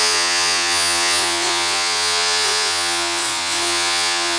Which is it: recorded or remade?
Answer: remade